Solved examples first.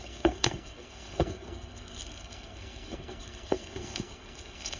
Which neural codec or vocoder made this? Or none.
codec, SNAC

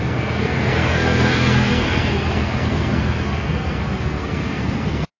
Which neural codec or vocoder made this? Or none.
codec, SNAC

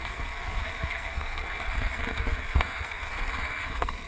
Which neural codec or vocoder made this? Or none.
codec, SNAC